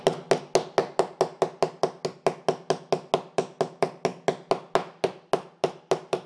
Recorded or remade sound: recorded